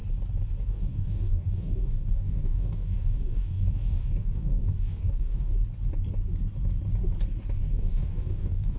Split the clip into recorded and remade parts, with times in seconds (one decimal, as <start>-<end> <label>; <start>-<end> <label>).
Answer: 0.0-0.6 recorded; 0.6-5.5 remade; 5.5-7.6 recorded; 7.6-8.8 remade